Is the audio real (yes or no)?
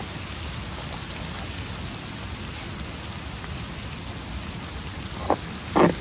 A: yes